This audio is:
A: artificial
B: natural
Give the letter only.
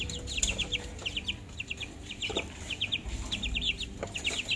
A